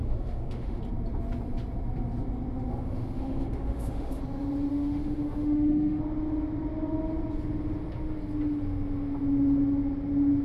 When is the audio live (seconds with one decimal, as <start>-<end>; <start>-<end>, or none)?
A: 0.8-2.7; 4.2-4.7; 6.0-10.4